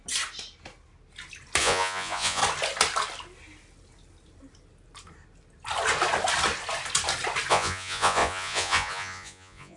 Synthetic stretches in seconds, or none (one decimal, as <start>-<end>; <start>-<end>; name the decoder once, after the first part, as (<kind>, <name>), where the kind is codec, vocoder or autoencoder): 1.6-2.4 (vocoder, Vocos); 7.5-9.8